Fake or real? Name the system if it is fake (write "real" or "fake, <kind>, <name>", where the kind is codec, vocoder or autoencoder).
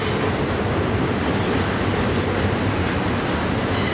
real